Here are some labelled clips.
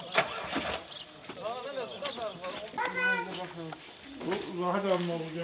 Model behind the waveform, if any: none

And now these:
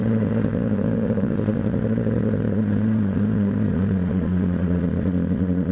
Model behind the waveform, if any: vocoder, Vocos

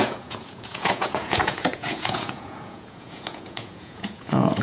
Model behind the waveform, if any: vocoder, Vocos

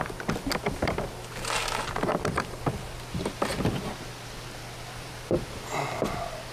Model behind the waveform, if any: none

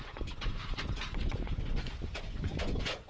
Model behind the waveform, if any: vocoder, Vocos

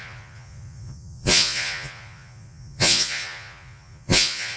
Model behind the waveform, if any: vocoder, Vocos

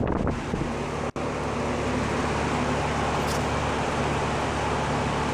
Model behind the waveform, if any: none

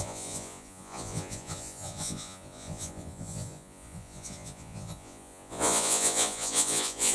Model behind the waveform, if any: vocoder, Vocos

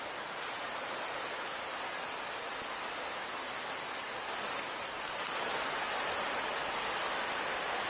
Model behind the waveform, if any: none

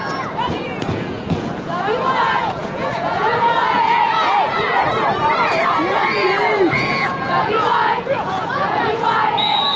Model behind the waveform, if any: vocoder, Vocos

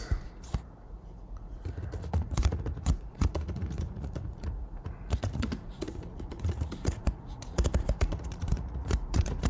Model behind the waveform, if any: vocoder, Vocos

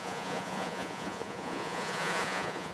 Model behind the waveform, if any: vocoder, Vocos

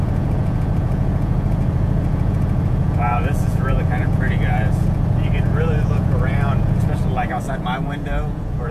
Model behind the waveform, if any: vocoder, Vocos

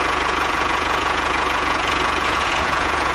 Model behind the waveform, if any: vocoder, Vocos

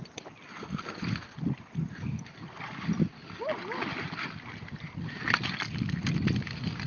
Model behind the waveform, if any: none